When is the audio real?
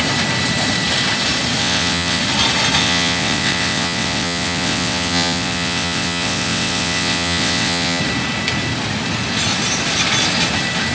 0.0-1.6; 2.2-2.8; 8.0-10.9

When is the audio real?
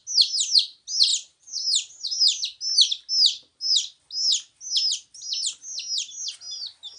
0.0-7.0